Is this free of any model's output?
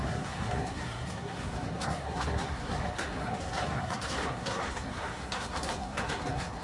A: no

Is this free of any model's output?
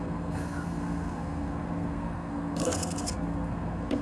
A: no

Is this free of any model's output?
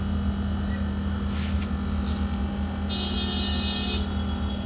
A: yes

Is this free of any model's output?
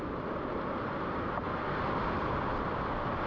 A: yes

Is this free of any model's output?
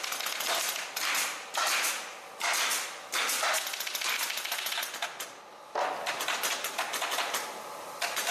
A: yes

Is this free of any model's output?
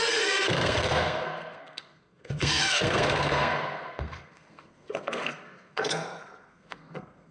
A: no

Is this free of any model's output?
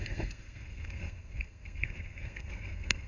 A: no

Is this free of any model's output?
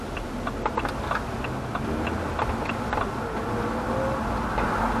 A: yes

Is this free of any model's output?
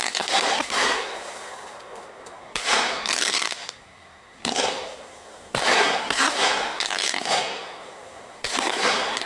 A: no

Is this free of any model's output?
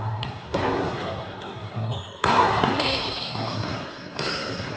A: no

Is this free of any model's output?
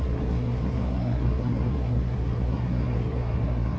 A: no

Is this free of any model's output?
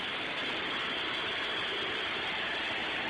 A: yes